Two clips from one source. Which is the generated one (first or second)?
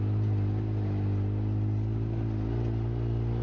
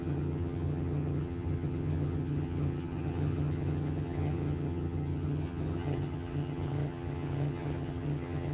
second